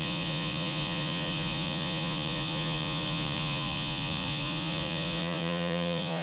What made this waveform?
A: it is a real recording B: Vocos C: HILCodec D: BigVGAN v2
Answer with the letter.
B